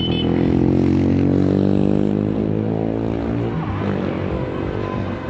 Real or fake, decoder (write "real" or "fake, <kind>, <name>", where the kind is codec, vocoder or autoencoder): real